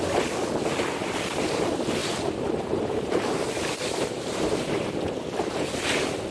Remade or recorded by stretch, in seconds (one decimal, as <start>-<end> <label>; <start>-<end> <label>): 0.0-2.0 recorded; 2.0-4.8 remade; 4.8-6.3 recorded